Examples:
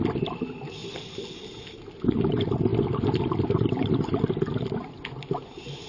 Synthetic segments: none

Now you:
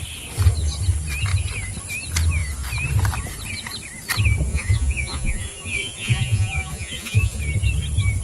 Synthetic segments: 4.5-7.4 (vocoder, Vocos)